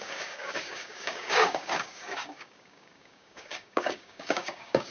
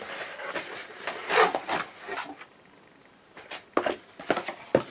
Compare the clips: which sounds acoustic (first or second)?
second